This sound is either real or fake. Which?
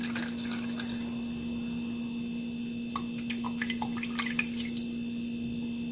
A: real